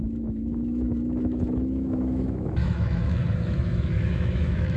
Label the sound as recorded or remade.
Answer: remade